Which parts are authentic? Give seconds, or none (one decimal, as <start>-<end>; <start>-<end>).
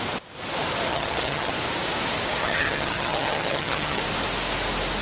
0.0-0.9; 1.5-2.4; 4.0-5.0